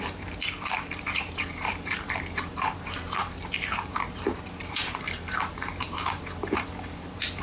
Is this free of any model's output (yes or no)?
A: no